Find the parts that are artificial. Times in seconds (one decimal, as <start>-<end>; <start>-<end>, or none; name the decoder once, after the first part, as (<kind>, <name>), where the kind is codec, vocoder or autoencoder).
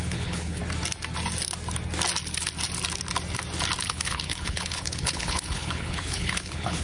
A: 0.0-0.6 (codec, HILCodec); 3.8-6.8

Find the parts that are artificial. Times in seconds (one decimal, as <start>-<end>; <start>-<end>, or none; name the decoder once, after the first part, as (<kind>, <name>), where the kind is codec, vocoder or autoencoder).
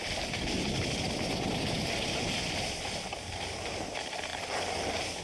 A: none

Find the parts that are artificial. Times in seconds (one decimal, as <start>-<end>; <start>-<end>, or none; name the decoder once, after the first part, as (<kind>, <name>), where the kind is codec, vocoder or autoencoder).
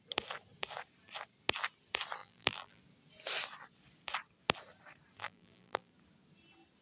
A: 2.2-2.8 (vocoder, BigVGAN v2); 5.2-5.9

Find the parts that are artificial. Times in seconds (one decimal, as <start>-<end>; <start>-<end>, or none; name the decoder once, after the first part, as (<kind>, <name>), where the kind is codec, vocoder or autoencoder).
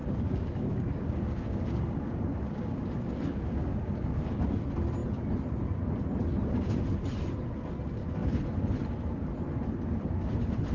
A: 0.0-4.4 (codec, DAC)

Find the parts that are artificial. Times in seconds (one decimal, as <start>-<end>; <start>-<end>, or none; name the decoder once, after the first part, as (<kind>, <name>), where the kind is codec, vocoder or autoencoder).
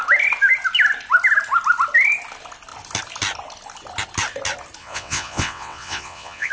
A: 4.8-6.5 (vocoder, WaveNeXt)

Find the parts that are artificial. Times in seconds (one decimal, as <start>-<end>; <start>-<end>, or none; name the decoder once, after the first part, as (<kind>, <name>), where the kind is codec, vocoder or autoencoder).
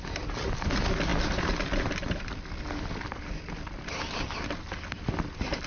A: none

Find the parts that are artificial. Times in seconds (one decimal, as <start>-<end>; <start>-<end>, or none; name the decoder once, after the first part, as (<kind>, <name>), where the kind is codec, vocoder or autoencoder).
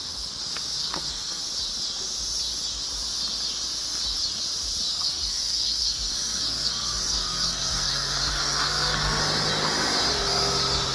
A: 0.8-1.4 (codec, SNAC); 4.9-9.2